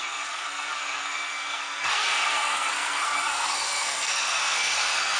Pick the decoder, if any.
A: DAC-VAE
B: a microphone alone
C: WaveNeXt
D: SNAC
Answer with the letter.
D